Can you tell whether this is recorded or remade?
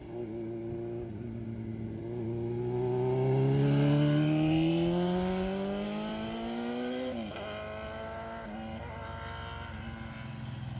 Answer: recorded